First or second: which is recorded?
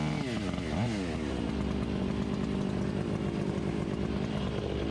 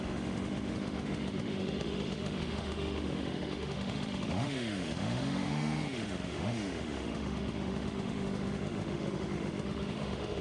first